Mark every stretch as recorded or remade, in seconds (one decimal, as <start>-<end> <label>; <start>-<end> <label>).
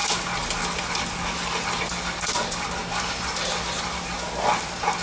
0.0-5.0 recorded